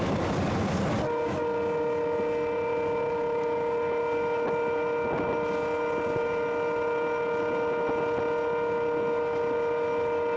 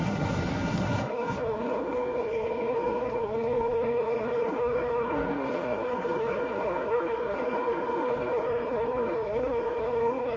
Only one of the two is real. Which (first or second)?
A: first